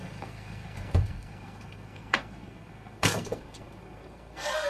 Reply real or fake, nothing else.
fake